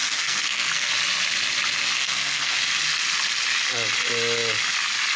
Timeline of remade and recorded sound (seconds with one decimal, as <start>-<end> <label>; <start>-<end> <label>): 0.0-0.9 remade; 0.9-2.0 recorded; 2.0-2.6 remade; 2.6-5.2 recorded